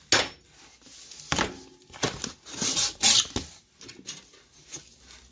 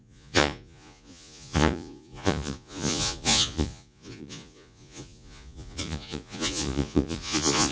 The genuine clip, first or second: first